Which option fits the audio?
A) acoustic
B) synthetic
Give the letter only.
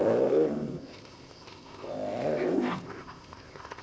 B